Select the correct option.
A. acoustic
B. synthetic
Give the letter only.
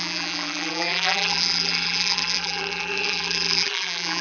B